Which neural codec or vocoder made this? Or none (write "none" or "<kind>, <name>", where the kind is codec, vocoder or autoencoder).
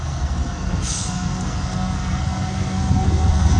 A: codec, SNAC